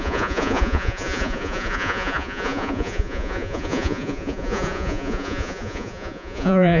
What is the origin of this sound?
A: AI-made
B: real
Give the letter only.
A